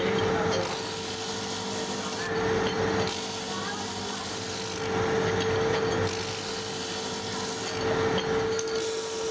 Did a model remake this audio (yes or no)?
no